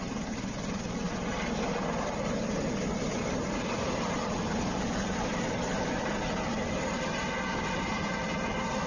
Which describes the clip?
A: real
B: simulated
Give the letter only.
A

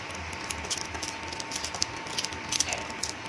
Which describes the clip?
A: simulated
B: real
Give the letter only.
B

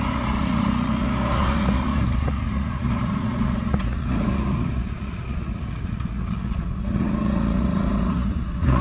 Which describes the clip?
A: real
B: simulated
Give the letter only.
B